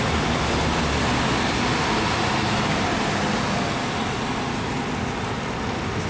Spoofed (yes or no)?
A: no